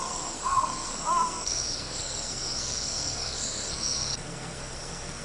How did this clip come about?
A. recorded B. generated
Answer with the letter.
B